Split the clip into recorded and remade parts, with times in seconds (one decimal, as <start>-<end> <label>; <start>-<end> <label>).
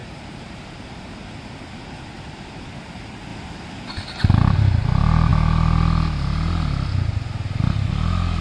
0.0-0.5 remade; 0.5-8.4 recorded